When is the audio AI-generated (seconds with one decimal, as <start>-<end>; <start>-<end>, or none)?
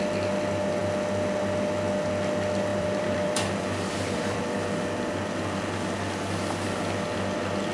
2.7-5.3